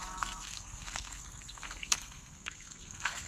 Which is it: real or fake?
fake